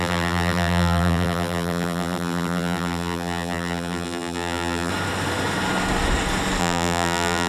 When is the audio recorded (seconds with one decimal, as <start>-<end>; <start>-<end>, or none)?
4.9-6.6